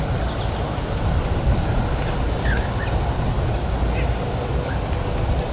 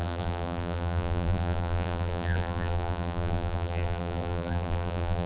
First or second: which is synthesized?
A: second